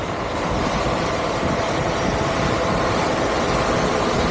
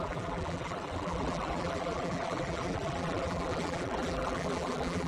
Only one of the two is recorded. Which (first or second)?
first